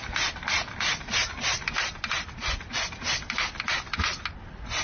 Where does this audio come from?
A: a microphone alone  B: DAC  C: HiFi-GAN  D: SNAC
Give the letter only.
A